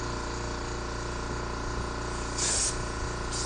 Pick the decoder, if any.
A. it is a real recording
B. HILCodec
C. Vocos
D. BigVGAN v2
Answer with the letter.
A